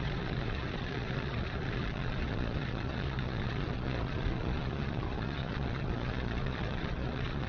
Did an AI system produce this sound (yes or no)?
yes